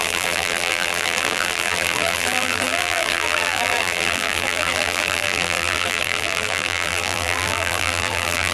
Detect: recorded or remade remade